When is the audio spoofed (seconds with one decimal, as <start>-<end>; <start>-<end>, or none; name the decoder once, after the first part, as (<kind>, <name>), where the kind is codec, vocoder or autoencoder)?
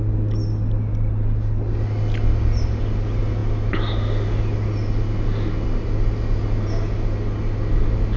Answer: none